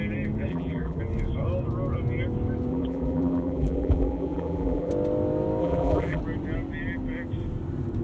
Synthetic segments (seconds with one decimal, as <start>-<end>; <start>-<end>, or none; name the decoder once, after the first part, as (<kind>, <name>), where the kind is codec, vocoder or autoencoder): 0.5-1.0 (vocoder, BigVGAN v2); 2.7-4.9; 5.6-6.2